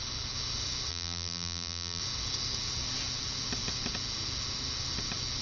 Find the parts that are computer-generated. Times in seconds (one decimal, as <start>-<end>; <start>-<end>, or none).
0.9-2.0